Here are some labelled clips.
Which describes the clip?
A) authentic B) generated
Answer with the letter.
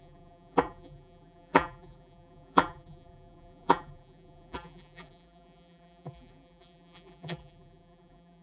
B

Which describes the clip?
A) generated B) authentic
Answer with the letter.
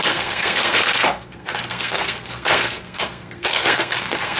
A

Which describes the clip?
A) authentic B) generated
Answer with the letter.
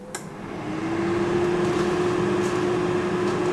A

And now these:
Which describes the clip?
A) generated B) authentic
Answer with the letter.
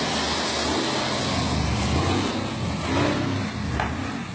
B